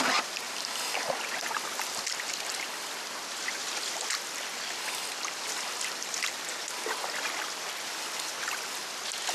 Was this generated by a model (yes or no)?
no